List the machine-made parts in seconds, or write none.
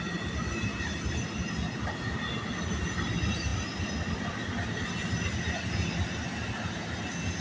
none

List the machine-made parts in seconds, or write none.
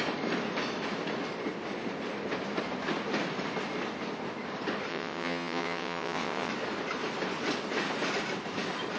4.9-6.5 (vocoder, WaveNeXt)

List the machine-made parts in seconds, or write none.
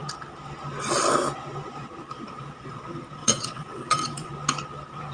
3.2-4.3 (vocoder, WaveNeXt)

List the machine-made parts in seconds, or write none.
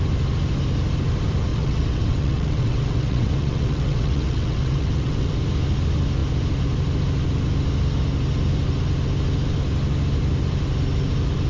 1.5-5.3 (vocoder, WaveNeXt)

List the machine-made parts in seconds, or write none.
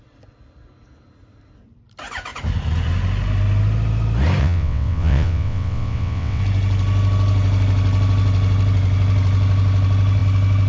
4.4-6.4 (vocoder, WaveNeXt)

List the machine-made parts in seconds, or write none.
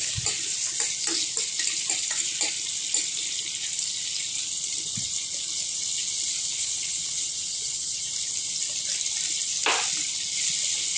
6.6-8.1 (vocoder, WaveNeXt)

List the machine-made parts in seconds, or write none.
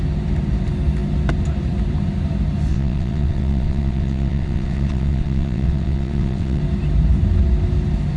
2.7-6.6 (vocoder, WaveNeXt)